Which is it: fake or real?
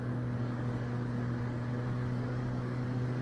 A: fake